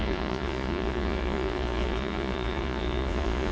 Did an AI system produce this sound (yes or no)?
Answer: yes